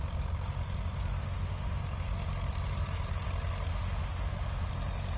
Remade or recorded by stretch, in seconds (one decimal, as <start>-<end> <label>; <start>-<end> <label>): 0.0-1.2 recorded; 1.2-1.8 remade; 1.8-3.7 recorded; 3.7-4.7 remade; 4.7-5.2 recorded